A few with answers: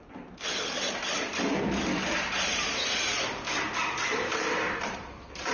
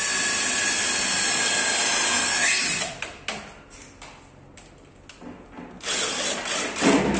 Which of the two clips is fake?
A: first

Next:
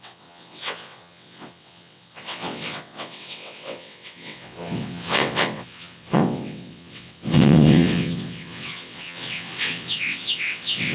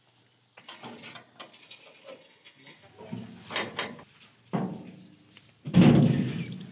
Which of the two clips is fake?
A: first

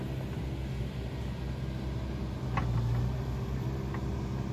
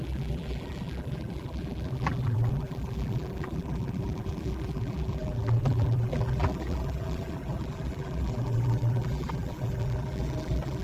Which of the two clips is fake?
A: second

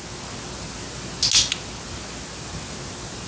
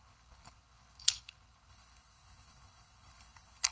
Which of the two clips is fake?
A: second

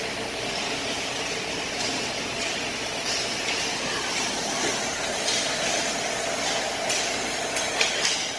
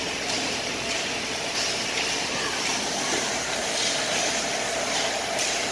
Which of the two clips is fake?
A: second